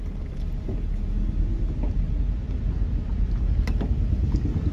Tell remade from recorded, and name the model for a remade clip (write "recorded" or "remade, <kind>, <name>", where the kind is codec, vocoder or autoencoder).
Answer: recorded